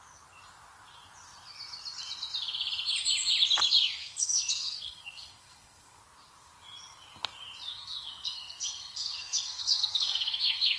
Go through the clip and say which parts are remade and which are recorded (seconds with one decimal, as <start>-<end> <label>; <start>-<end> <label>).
0.0-4.0 recorded; 4.0-6.0 remade; 6.0-7.7 recorded; 7.7-10.8 remade